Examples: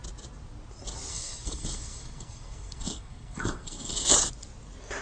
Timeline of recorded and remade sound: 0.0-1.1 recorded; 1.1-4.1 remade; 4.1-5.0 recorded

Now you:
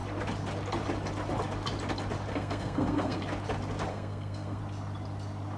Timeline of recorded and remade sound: 0.0-2.3 recorded; 2.3-3.2 remade; 3.2-3.9 recorded; 3.9-4.6 remade; 4.6-5.6 recorded

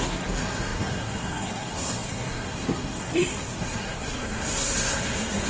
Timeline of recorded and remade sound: 0.0-5.5 remade

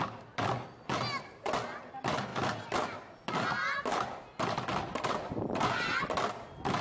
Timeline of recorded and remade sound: 0.0-6.8 recorded

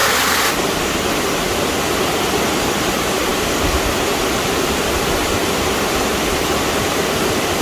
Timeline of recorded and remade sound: 0.0-7.6 recorded